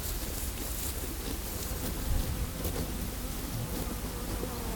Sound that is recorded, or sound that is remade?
recorded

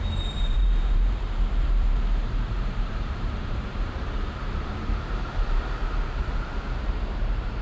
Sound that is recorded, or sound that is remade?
remade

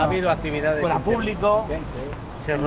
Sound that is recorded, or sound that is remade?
remade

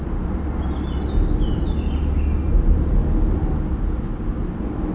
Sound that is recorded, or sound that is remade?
recorded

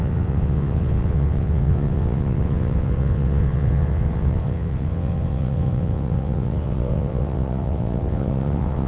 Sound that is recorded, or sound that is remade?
remade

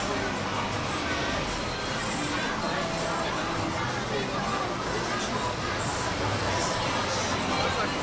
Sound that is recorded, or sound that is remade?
recorded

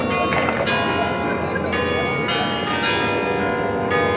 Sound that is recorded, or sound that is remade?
recorded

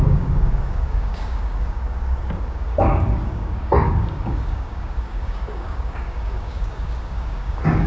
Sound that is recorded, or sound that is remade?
remade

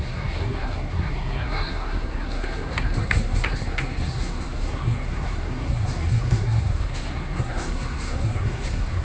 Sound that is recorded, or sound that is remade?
remade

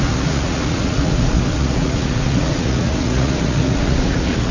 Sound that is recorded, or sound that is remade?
remade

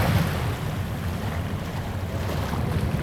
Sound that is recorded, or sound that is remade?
recorded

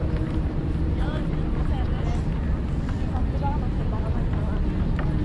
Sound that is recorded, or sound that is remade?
recorded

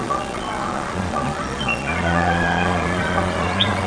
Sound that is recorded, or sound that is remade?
remade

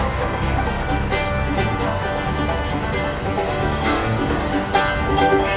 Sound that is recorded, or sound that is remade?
remade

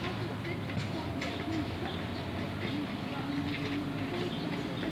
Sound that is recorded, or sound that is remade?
recorded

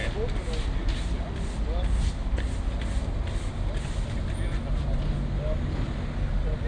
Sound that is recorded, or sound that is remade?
recorded